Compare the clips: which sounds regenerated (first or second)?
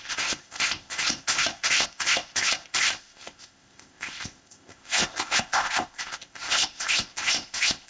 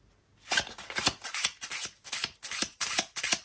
first